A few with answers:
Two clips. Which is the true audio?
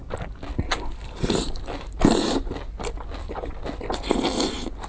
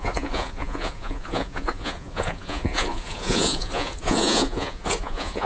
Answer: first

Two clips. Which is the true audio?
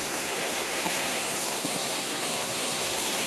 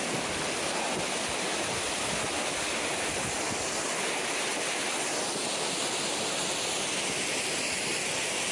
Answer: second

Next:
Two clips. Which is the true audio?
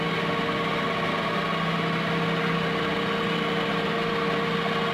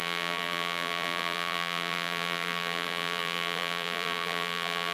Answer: first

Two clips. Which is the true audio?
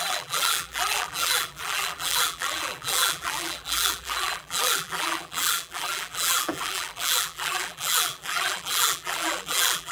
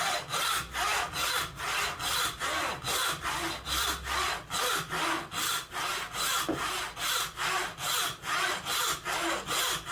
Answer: second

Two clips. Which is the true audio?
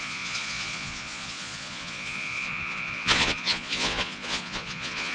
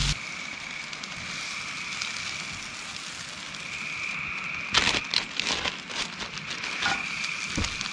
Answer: second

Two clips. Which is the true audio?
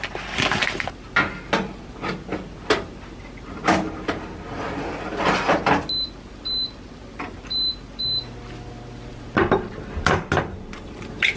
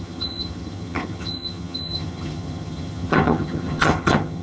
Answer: first